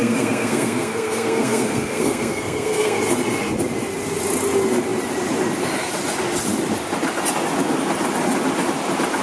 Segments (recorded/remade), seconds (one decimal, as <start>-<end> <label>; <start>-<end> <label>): 0.0-3.0 remade; 3.0-9.2 recorded